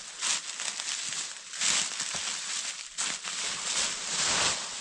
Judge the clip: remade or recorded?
recorded